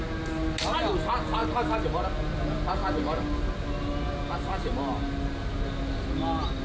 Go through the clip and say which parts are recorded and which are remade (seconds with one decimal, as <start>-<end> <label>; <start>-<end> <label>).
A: 0.0-6.6 recorded